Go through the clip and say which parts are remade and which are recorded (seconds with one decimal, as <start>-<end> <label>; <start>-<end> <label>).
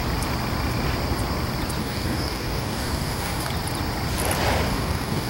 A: 0.0-1.8 recorded; 1.8-3.5 remade; 3.5-4.7 recorded; 4.7-5.3 remade